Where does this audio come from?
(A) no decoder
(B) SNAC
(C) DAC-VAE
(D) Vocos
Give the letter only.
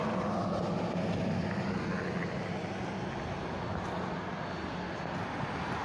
A